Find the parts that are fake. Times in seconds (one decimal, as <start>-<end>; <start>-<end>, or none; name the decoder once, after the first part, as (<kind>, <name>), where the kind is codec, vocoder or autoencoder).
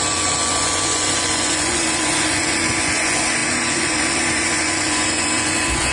0.0-5.9 (vocoder, Vocos)